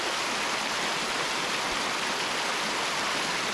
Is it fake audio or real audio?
real